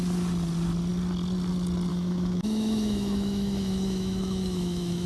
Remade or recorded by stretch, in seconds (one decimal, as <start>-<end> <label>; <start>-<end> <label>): 0.0-1.9 recorded; 1.9-5.1 remade

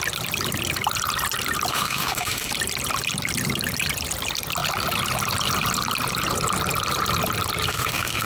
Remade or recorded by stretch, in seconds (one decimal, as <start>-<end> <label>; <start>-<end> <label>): 0.0-1.7 recorded; 1.7-2.5 remade; 2.5-7.7 recorded; 7.7-8.3 remade

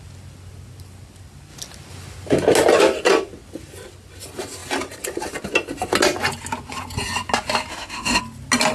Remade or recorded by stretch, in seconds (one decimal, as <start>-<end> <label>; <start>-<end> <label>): 0.0-7.7 recorded; 7.7-8.2 remade; 8.2-8.7 recorded

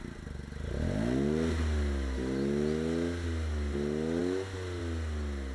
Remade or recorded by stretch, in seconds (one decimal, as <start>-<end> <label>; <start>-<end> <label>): 0.0-5.5 recorded